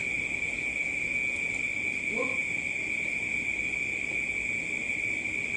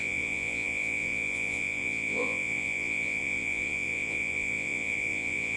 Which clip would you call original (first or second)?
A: first